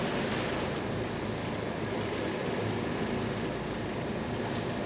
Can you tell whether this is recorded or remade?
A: recorded